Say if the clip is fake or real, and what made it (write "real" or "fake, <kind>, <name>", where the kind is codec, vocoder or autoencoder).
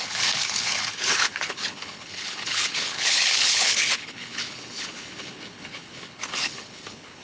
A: fake, codec, HILCodec